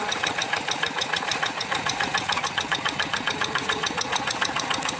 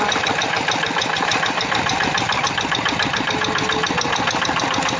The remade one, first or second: first